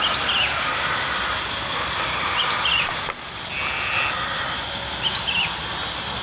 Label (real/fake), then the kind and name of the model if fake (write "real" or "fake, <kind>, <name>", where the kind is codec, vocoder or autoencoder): real